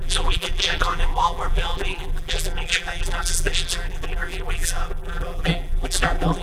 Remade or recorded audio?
remade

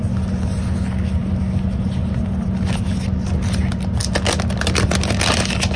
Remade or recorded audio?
recorded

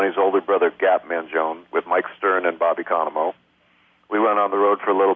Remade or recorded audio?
recorded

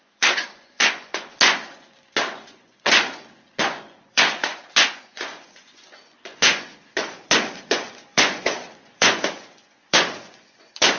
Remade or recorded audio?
remade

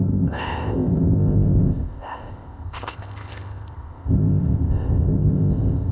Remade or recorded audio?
remade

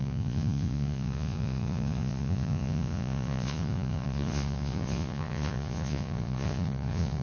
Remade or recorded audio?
remade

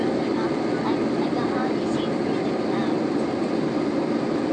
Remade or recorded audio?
recorded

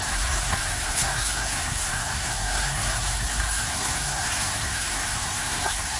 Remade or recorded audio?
remade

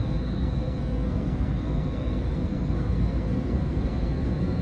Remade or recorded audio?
remade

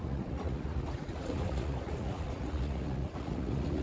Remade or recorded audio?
remade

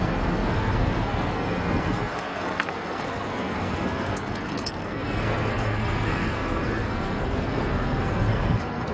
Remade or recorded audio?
remade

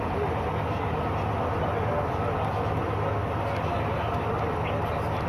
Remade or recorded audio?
recorded